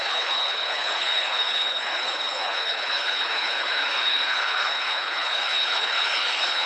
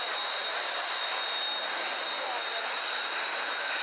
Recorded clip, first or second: second